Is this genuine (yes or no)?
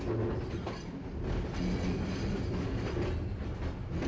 yes